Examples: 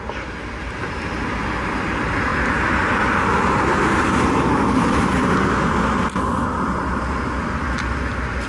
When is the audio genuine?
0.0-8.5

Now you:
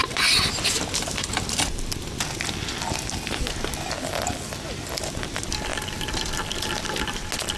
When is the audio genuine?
0.0-7.6

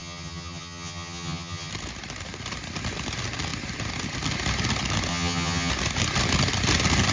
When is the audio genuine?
1.7-5.1; 5.7-7.1

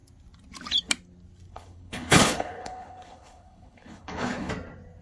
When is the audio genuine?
0.0-1.5; 4.5-5.0

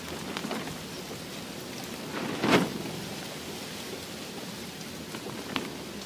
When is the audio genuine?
0.0-6.1

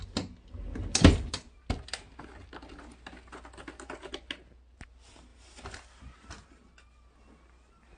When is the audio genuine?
0.0-8.0